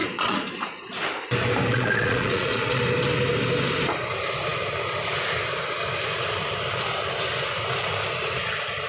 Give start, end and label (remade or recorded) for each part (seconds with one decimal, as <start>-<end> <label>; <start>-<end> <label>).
0.0-0.9 remade; 0.9-1.7 recorded; 1.7-2.8 remade; 2.8-8.9 recorded